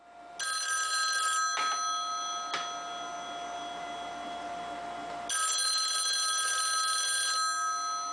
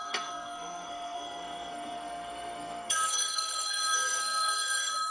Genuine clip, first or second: first